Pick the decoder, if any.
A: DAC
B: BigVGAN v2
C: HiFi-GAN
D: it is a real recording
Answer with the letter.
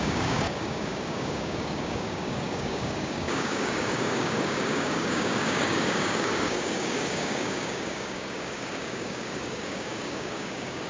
A